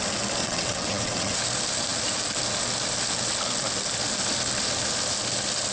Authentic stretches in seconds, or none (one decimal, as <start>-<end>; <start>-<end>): 0.0-0.4; 1.4-5.7